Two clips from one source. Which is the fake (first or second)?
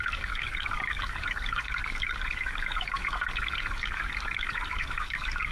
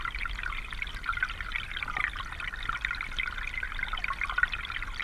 first